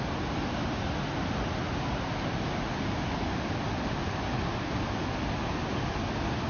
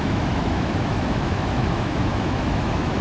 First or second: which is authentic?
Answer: first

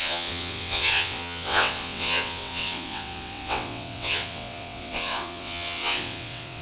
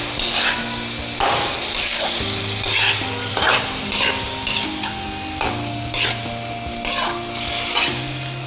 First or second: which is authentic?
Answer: second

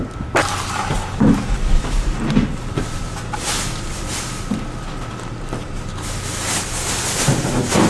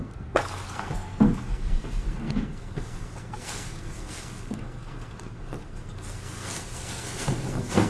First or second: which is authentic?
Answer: first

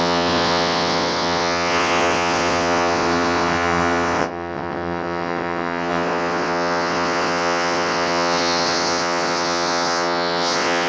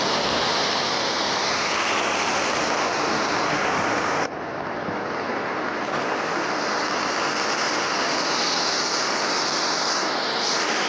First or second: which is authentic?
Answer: second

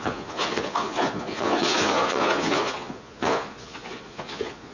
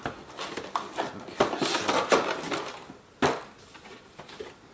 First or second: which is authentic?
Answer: second